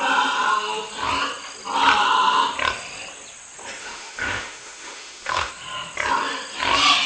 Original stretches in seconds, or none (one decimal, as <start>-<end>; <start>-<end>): 0.0-3.8; 5.5-7.1